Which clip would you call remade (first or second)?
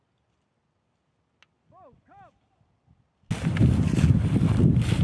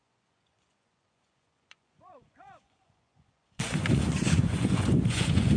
second